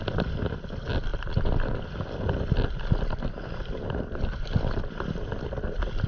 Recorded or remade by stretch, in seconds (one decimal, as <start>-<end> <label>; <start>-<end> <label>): 0.0-6.1 recorded